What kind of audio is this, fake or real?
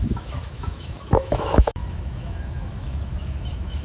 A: fake